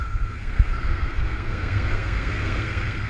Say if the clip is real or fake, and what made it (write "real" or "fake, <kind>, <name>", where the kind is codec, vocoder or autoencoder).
fake, codec, SNAC